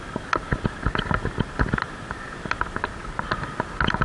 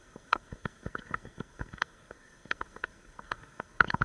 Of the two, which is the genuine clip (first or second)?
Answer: first